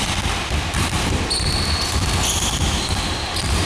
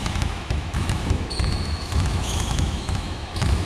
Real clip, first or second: first